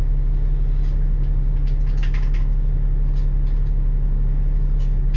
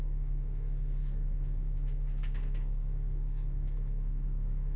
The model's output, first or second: second